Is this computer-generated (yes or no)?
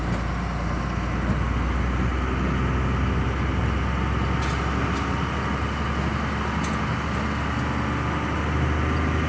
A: no